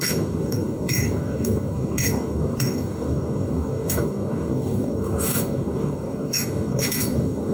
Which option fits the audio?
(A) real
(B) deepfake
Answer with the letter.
B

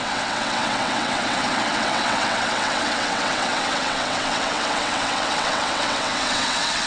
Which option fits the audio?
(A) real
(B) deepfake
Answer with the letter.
B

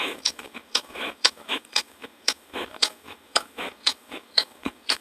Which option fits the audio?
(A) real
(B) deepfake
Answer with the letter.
B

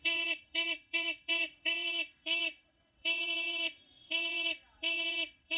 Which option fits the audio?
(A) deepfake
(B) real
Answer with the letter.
A